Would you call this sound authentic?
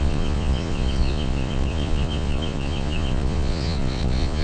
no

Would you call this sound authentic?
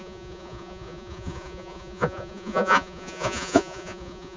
no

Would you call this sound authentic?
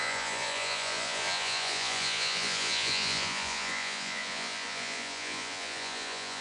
no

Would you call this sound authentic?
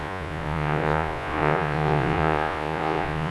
no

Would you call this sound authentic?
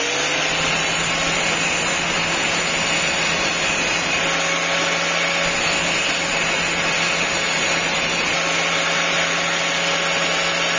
yes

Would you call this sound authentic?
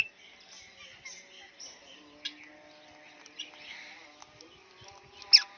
yes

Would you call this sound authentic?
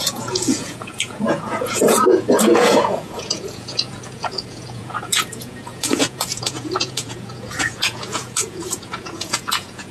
no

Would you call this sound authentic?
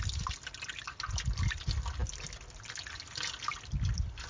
yes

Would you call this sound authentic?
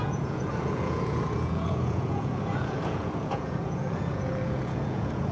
no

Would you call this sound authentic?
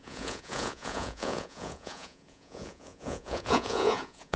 no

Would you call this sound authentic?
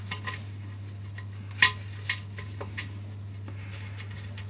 yes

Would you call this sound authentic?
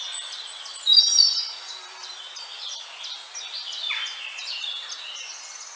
yes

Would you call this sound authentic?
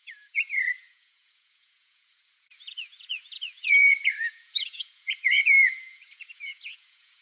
no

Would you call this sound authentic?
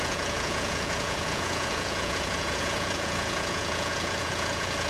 no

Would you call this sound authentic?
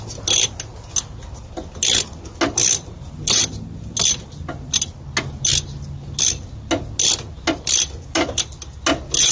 yes